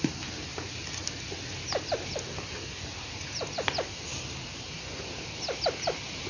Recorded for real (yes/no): yes